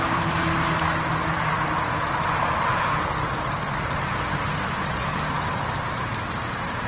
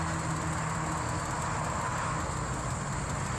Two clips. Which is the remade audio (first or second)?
first